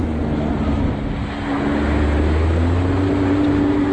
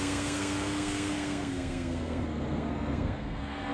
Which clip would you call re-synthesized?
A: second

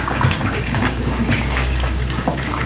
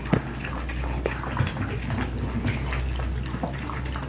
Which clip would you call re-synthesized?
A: first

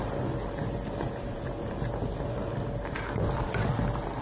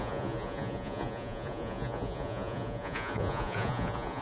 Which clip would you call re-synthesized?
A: second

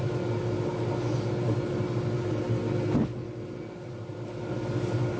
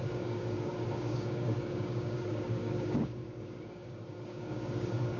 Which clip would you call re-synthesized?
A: second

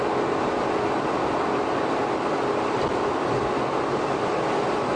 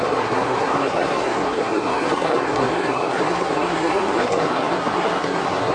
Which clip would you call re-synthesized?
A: second